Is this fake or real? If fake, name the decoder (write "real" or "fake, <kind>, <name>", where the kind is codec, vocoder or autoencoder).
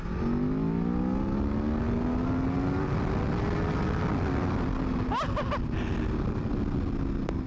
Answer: real